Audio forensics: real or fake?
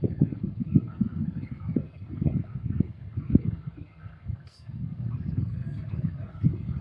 fake